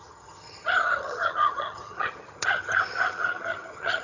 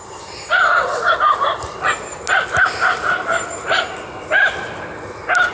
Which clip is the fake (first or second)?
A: first